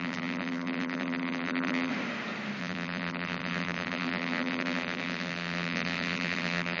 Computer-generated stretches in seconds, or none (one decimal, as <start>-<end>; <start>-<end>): 0.0-1.9; 2.6-6.8